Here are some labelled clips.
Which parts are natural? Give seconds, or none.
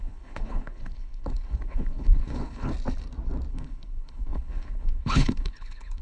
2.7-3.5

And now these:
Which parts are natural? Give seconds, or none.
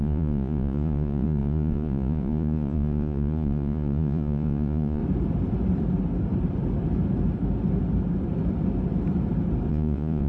5.0-9.7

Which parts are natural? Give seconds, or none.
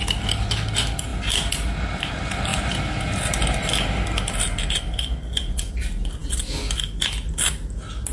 0.0-8.1